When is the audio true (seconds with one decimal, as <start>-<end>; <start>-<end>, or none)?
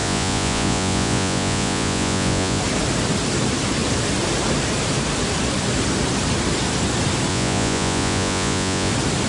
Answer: 2.6-7.3; 8.9-9.3